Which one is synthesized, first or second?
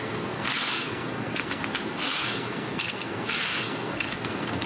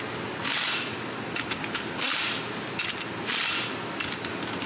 first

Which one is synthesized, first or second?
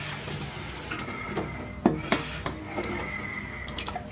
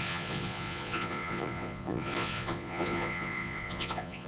second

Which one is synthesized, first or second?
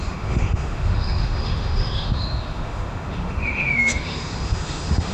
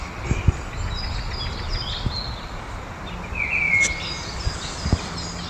first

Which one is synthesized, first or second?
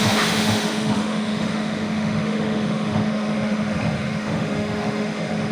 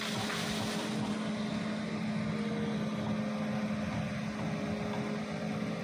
first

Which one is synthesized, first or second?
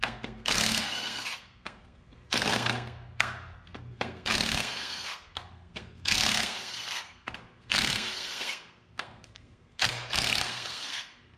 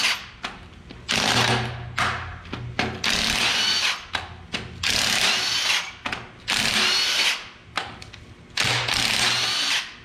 first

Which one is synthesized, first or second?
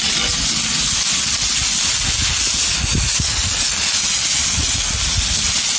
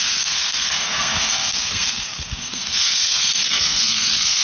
second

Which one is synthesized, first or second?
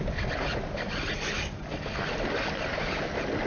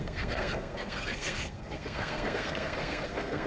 second